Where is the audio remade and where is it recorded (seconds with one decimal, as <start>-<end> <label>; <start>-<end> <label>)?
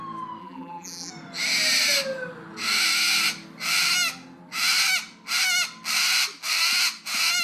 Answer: 0.0-0.4 recorded; 0.4-1.1 remade; 1.1-7.4 recorded